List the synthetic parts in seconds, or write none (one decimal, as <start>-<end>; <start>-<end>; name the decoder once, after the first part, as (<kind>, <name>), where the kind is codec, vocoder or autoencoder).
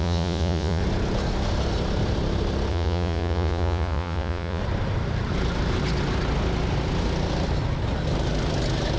0.0-0.8 (vocoder, Vocos); 2.7-4.6